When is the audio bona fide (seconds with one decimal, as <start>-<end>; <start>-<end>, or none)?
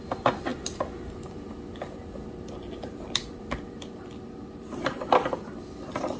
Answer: 0.0-6.2